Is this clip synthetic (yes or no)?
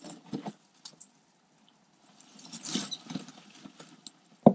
no